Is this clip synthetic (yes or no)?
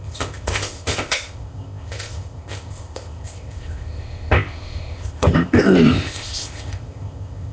yes